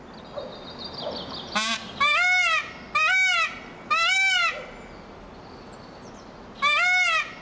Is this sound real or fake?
real